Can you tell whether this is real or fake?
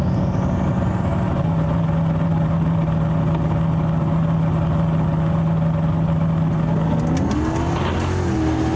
real